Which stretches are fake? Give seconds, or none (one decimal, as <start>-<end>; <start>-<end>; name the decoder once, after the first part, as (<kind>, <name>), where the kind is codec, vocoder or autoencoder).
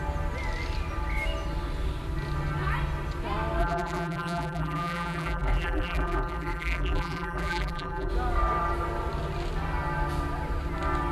3.6-8.1 (vocoder, BigVGAN v2)